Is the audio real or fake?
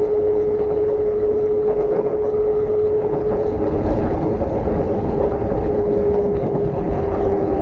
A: fake